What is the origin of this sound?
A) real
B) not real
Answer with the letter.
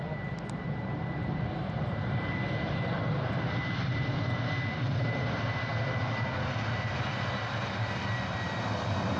B